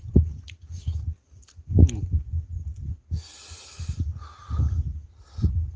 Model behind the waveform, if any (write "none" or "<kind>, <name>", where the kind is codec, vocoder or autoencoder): none